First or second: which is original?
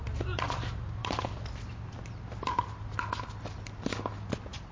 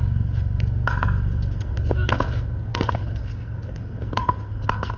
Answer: first